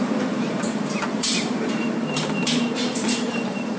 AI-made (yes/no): yes